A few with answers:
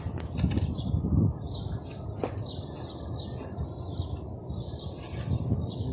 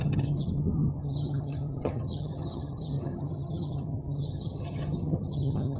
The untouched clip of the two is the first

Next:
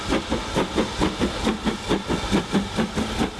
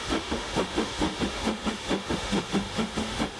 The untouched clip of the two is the first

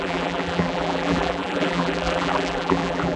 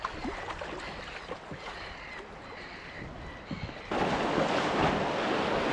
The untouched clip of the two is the second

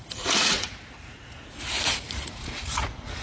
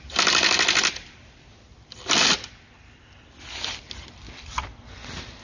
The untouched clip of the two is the second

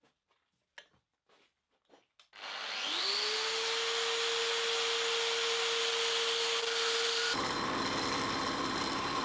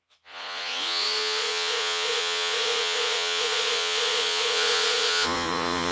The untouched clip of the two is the first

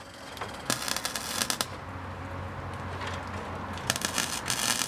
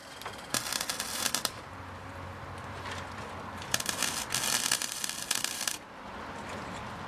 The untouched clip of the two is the first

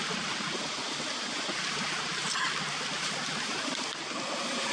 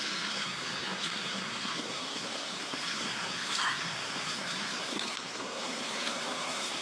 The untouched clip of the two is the first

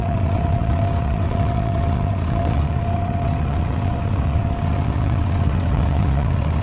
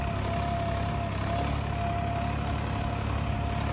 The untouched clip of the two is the second